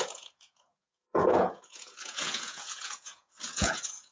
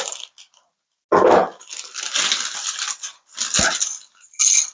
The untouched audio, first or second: second